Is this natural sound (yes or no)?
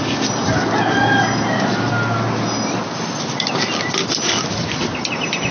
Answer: yes